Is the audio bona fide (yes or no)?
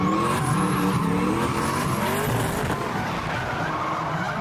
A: yes